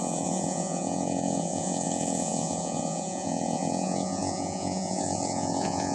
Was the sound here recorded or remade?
remade